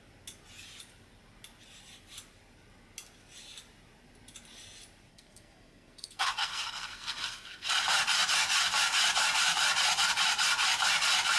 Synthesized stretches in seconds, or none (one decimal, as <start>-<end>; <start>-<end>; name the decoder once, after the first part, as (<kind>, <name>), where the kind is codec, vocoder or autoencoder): 5.1-7.7 (codec, SNAC)